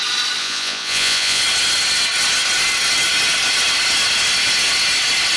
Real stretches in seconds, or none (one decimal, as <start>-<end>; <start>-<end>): 0.0-0.4; 1.4-5.4